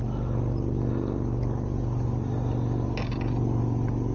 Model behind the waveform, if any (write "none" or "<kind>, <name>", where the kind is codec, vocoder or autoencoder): none